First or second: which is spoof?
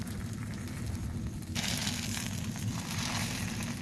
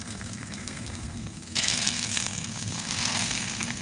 second